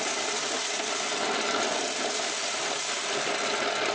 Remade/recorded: recorded